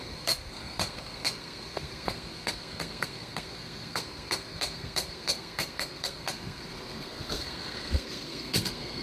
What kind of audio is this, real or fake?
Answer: fake